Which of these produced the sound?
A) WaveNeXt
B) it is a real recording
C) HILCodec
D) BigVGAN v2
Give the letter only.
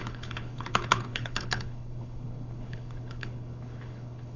C